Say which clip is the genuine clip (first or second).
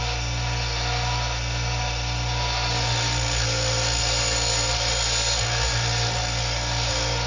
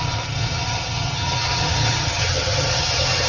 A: first